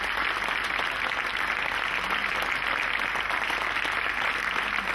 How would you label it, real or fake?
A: real